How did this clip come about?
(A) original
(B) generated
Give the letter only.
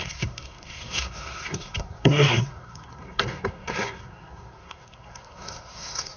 B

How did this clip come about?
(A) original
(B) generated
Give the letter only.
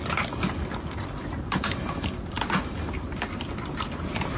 A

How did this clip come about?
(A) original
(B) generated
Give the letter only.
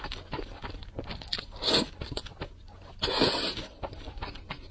A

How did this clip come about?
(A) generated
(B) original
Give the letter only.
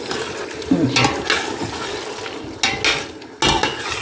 B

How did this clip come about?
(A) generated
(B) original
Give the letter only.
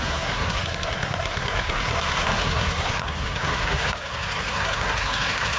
A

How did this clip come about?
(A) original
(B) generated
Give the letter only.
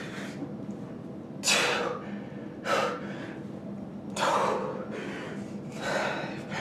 A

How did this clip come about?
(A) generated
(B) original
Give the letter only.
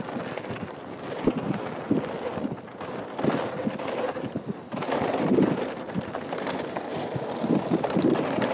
B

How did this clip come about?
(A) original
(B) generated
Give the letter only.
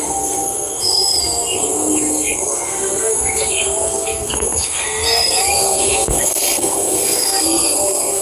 B